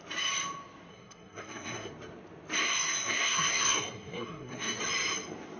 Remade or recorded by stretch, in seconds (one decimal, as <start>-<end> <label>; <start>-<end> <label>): 0.0-0.9 recorded; 0.9-1.9 remade; 1.9-2.6 recorded; 2.6-4.8 remade; 4.8-5.6 recorded